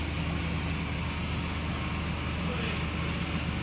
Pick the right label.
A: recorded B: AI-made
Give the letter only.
A